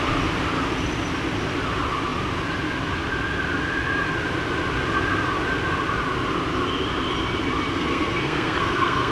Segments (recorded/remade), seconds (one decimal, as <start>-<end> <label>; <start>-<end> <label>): 0.0-7.7 recorded; 7.7-9.1 remade